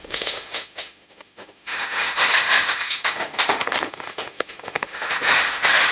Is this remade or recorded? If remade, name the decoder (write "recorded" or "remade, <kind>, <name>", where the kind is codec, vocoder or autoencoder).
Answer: remade, autoencoder, DAC-VAE